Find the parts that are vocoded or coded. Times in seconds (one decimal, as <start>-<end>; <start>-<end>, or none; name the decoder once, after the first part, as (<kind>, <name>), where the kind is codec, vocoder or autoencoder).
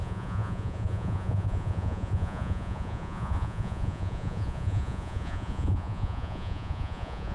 0.0-7.3 (vocoder, Vocos)